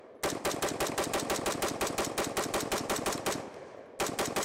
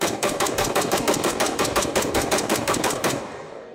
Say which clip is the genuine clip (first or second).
first